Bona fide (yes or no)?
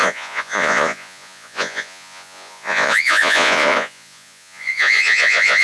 no